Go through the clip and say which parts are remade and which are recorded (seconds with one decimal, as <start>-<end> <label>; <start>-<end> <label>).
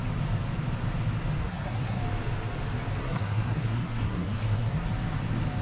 0.0-1.4 recorded; 1.4-2.0 remade; 2.0-3.0 recorded; 3.0-4.9 remade; 4.9-5.6 recorded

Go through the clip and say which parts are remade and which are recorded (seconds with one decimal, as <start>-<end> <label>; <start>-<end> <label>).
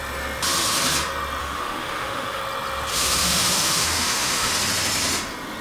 0.0-1.4 recorded; 1.4-2.4 remade; 2.4-2.9 recorded; 2.9-4.5 remade; 4.5-5.6 recorded